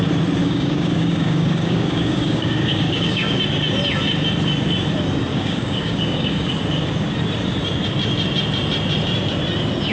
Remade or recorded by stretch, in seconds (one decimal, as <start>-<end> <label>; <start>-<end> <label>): 0.0-0.4 recorded; 0.4-3.4 remade; 3.4-5.3 recorded; 5.3-6.5 remade; 6.5-9.9 recorded